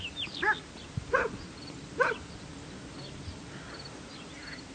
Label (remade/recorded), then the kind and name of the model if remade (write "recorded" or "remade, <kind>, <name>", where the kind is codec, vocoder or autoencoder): recorded